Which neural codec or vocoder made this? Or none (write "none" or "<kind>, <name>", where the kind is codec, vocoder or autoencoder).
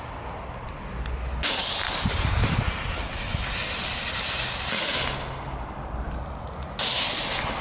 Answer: none